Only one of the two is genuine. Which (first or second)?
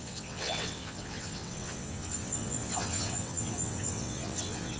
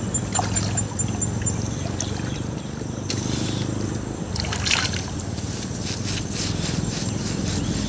second